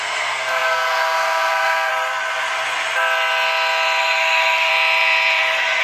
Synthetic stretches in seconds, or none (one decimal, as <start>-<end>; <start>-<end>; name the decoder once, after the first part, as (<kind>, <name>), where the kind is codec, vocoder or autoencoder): 0.0-1.9 (codec, SNAC); 4.0-4.7

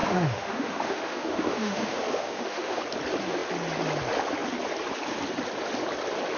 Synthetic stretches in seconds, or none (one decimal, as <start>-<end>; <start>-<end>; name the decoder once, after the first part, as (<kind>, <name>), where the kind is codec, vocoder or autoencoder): 0.0-2.8 (autoencoder, DAC-VAE)

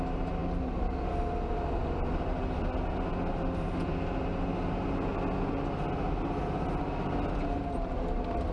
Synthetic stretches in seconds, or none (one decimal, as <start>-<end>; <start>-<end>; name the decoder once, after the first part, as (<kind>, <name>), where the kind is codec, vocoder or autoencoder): none

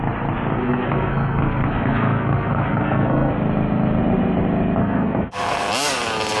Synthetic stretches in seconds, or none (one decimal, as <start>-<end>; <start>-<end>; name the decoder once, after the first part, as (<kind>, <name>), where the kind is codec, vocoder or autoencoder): 0.5-3.3 (codec, SNAC); 4.8-5.7

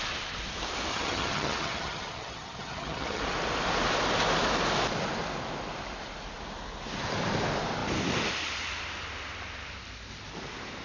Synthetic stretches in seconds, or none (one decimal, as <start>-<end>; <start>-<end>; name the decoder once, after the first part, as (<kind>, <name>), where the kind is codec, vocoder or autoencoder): 0.9-3.2 (vocoder, HiFi-GAN)